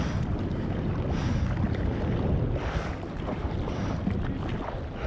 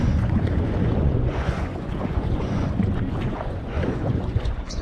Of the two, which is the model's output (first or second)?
second